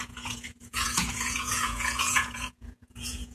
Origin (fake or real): fake